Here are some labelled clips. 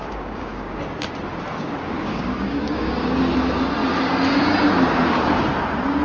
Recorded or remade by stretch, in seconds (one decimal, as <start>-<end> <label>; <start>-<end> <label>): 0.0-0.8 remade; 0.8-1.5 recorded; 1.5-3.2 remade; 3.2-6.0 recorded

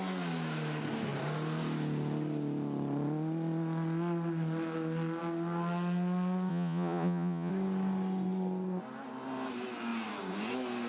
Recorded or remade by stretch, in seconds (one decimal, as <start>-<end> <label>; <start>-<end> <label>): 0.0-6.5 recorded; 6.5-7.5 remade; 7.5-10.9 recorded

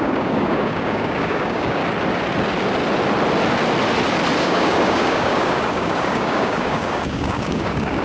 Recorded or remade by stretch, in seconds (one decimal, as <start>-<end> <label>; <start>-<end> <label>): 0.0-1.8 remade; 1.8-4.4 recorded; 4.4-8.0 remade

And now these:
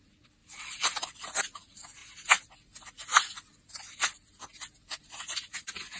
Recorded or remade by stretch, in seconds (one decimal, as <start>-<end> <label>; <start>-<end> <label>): 0.0-0.4 recorded; 0.4-1.4 remade; 1.4-6.0 recorded